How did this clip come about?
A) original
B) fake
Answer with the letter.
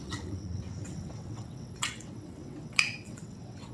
B